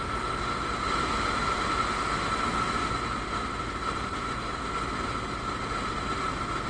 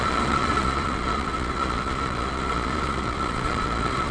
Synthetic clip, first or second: second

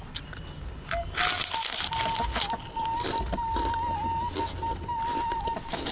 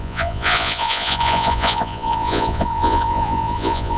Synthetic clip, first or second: second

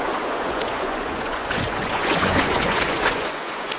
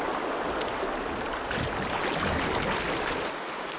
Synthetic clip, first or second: first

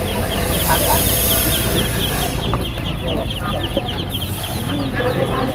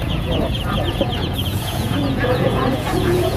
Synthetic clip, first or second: second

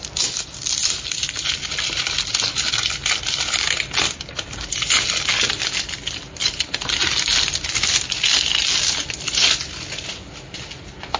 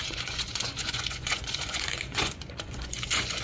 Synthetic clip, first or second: second